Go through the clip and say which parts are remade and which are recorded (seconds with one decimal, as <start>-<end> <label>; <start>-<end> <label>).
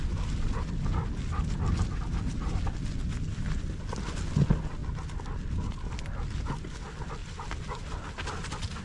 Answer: 0.0-8.8 recorded